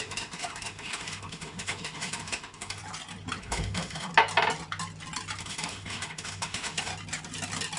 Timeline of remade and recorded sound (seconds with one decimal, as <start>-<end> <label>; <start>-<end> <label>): 0.0-2.8 remade; 2.8-3.4 recorded; 3.4-4.1 remade; 4.1-5.4 recorded; 5.4-6.9 remade; 6.9-7.8 recorded